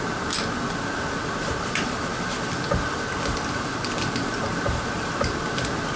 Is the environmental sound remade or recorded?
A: recorded